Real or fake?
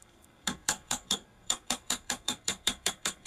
fake